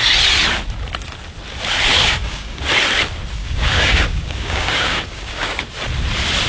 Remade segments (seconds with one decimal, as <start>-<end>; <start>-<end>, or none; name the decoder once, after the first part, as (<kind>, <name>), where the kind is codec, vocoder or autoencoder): 1.9-2.6 (codec, DAC); 3.4-5.6